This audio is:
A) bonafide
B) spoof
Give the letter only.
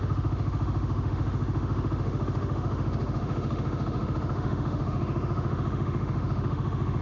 B